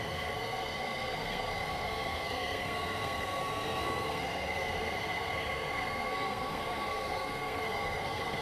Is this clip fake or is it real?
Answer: fake